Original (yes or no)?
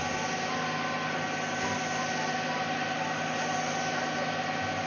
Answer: yes